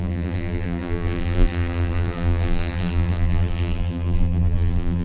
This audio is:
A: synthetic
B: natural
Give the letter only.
A